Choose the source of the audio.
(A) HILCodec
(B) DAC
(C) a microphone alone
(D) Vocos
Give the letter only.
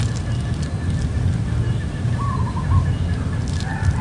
C